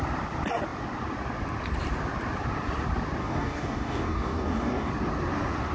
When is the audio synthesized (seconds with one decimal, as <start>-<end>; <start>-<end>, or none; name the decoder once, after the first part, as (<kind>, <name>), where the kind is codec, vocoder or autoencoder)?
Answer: 3.2-4.9 (codec, DAC)